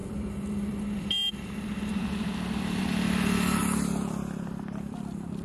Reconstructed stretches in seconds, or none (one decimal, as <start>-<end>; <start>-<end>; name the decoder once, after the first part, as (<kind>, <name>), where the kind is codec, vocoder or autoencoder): 0.0-2.8 (vocoder, BigVGAN v2); 3.6-5.0